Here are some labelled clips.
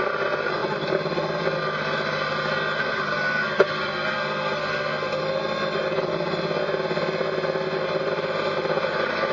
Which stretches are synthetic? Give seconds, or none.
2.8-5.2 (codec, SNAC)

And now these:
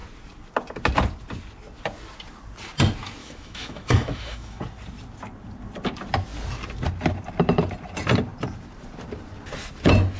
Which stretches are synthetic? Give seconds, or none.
3.2-4.6 (autoencoder, DAC-VAE)